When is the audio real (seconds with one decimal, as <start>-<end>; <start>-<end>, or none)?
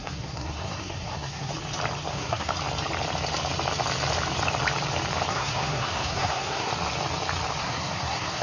1.5-2.1; 2.5-5.3; 6.7-7.6